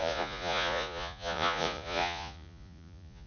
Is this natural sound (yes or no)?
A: no